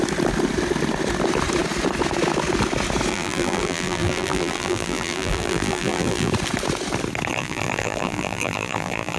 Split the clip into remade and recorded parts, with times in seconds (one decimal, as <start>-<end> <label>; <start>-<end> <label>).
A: 0.0-3.1 recorded; 3.1-6.3 remade; 6.3-7.3 recorded; 7.3-9.2 remade